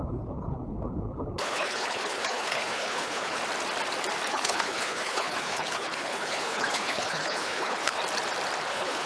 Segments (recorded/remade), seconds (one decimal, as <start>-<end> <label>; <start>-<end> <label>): 0.0-3.4 remade; 3.4-4.3 recorded; 4.3-8.0 remade; 8.0-8.7 recorded; 8.7-9.1 remade